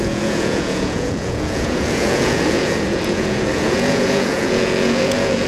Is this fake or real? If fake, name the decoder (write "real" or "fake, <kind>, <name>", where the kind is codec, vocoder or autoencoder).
fake, vocoder, Vocos